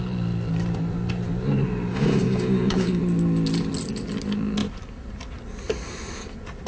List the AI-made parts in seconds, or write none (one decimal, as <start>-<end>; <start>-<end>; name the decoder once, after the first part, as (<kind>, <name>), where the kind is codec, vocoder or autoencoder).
1.9-3.0 (codec, DAC)